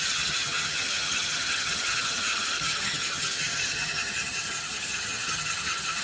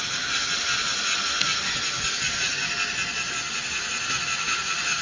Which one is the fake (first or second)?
first